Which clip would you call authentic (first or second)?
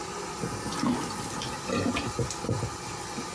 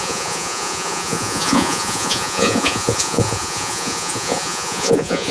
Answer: first